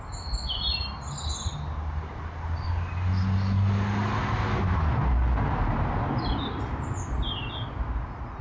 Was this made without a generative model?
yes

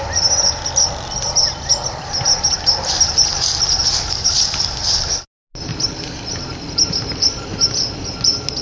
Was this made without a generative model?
yes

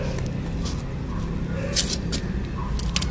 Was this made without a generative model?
yes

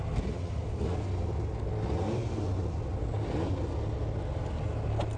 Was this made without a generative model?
yes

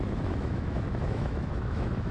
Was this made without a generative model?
no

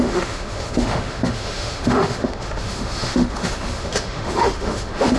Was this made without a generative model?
no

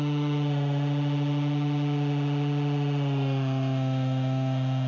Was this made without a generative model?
no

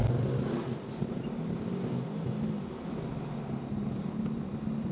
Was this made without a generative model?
yes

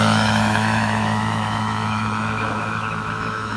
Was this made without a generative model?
no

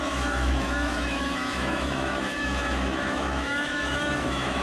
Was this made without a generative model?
no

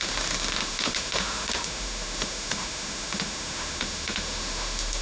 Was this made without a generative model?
no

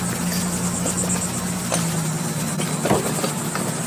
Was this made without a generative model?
yes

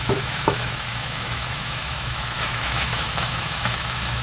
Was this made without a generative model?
no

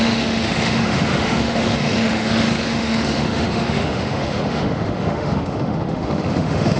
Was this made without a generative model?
no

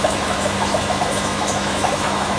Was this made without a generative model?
no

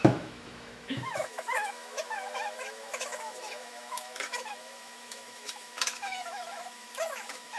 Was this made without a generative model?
no